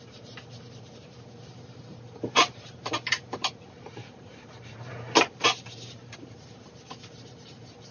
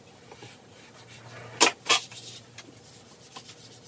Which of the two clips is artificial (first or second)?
first